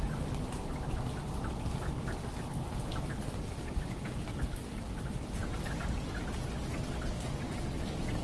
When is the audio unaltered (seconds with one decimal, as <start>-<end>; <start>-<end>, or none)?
0.0-8.2